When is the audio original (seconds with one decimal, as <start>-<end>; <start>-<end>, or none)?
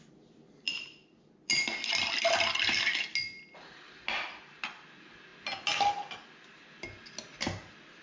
0.0-8.0